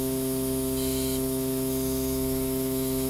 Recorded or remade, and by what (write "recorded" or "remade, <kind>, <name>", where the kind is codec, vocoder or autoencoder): remade, autoencoder, DAC-VAE